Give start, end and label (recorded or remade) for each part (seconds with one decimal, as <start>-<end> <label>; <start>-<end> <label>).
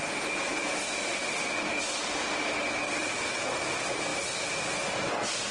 0.0-3.0 recorded; 3.0-3.5 remade; 3.5-5.5 recorded